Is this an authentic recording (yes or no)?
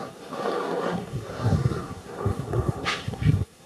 no